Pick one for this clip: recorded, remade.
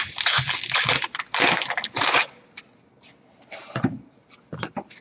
recorded